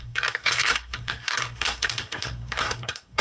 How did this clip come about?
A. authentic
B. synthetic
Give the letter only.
B